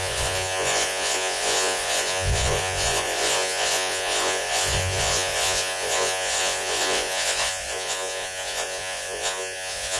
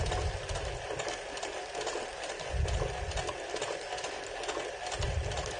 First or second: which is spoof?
first